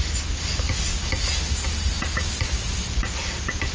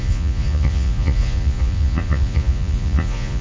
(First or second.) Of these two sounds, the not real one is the second